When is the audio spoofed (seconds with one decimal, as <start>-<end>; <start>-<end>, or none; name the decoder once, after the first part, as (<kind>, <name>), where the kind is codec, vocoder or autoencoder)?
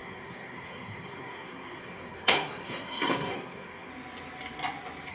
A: 0.0-3.9 (codec, SNAC)